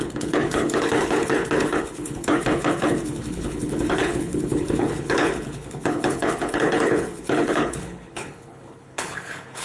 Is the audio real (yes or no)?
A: no